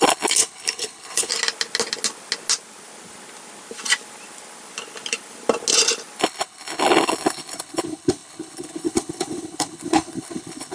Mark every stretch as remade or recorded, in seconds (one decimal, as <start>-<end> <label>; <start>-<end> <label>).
0.0-1.3 remade; 1.3-6.2 recorded; 6.2-10.7 remade